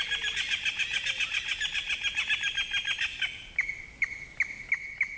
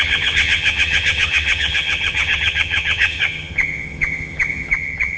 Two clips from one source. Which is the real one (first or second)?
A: first